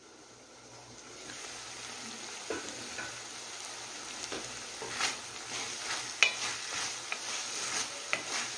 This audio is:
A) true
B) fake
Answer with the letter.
A